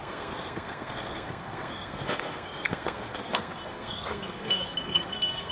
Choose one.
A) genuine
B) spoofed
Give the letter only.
B